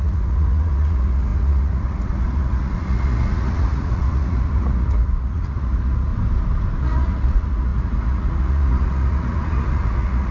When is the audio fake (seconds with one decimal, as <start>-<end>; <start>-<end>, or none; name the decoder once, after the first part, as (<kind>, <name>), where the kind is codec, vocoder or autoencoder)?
0.0-6.1 (vocoder, Vocos); 6.8-10.3